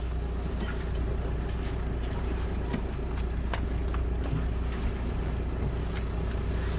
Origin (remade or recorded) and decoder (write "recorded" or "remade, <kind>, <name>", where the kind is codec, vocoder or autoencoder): recorded